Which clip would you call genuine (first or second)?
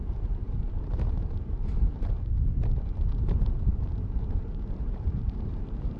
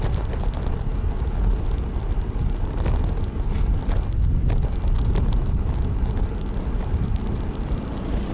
second